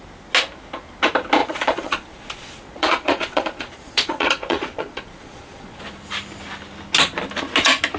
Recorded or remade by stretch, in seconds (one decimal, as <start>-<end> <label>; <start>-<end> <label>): 0.0-1.4 recorded; 1.4-6.0 remade; 6.0-8.0 recorded